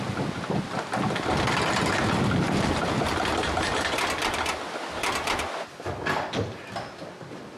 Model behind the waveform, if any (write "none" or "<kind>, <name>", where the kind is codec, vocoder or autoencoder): none